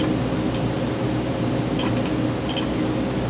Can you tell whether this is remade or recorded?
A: recorded